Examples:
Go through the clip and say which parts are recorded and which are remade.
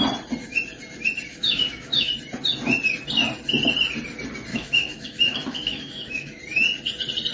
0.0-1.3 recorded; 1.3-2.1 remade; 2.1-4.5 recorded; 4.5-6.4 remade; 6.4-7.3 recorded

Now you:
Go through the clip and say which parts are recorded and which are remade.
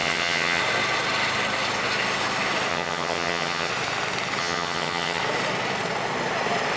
0.0-0.6 remade; 0.6-2.7 recorded; 2.7-3.7 remade; 3.7-4.4 recorded; 4.4-5.2 remade; 5.2-6.8 recorded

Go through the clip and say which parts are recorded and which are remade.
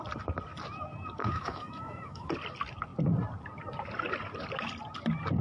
0.0-1.2 recorded; 1.2-2.3 remade; 2.3-5.4 recorded